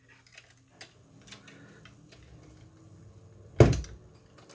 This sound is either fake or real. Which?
real